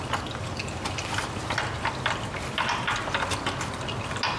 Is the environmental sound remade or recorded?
recorded